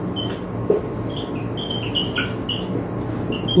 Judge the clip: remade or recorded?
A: recorded